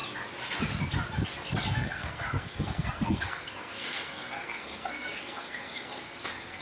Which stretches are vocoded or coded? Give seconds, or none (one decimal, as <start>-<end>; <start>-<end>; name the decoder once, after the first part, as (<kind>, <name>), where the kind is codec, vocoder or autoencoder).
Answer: 1.7-6.6 (codec, SNAC)